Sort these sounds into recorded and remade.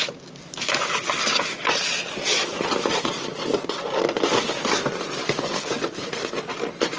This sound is recorded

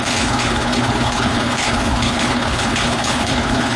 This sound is remade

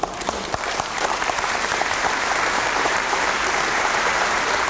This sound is remade